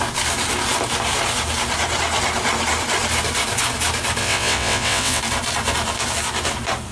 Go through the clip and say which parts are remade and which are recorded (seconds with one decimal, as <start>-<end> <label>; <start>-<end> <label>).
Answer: 0.0-4.2 recorded; 4.2-5.2 remade; 5.2-6.9 recorded